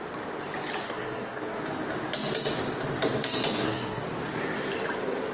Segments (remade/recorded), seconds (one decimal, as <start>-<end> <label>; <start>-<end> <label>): 0.0-0.8 recorded; 0.8-1.6 remade; 1.6-3.5 recorded; 3.5-4.0 remade; 4.0-5.3 recorded